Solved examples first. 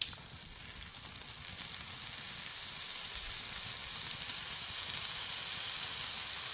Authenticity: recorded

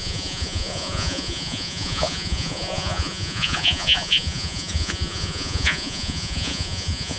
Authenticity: remade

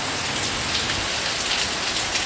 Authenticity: recorded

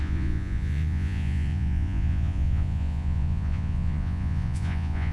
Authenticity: remade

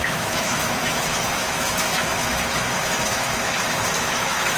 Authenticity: remade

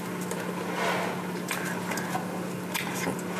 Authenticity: recorded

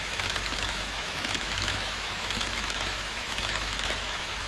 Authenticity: remade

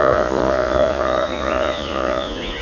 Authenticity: remade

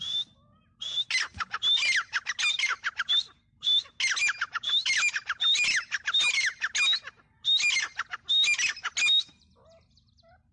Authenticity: recorded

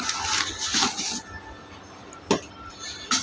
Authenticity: recorded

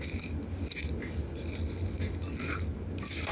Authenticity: recorded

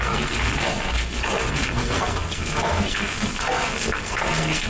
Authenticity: remade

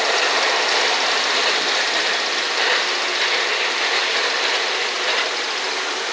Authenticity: recorded